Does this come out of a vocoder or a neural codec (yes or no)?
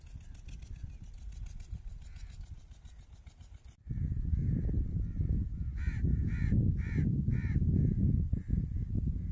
no